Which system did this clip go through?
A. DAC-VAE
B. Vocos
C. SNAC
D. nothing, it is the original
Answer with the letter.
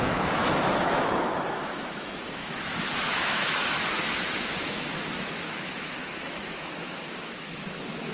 A